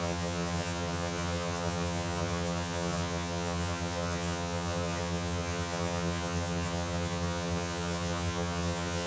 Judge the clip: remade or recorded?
remade